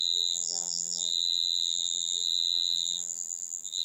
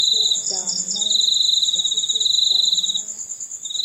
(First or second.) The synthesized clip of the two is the first